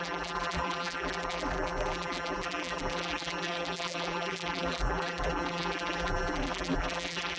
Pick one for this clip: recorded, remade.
remade